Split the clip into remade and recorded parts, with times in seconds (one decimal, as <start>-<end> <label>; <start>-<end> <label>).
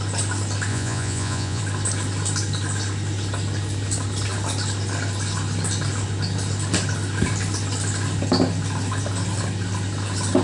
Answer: 0.0-0.7 recorded; 0.7-1.6 remade; 1.6-10.4 recorded